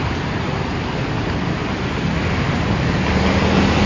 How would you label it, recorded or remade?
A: recorded